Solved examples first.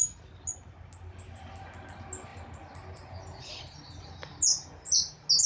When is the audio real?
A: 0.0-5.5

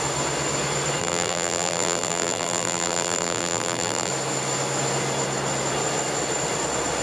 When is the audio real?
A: 0.0-1.0; 4.1-7.0